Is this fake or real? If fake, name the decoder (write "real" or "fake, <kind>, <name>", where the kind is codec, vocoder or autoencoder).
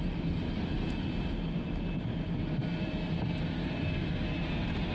real